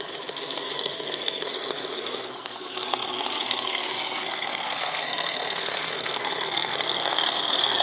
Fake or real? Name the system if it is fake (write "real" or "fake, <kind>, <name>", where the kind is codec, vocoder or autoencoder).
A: fake, codec, SNAC